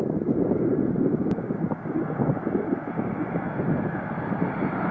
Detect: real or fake real